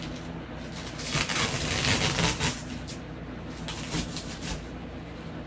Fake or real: real